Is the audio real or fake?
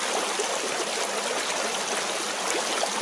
real